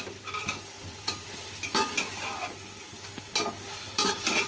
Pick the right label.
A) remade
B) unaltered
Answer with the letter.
B